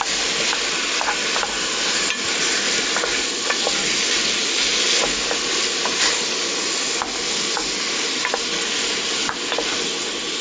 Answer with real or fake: real